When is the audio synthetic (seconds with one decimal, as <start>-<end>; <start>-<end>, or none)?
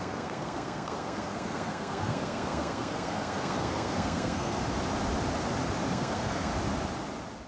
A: 0.0-4.6; 5.9-6.5